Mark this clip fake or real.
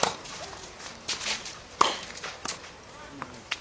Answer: fake